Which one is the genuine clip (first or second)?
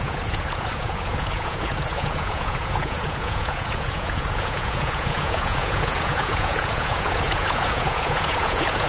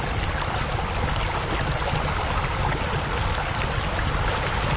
second